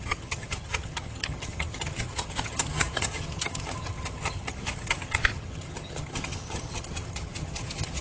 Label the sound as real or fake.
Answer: fake